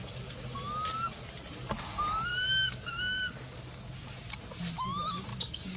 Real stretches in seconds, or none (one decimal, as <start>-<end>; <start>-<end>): 0.0-2.3; 3.9-5.3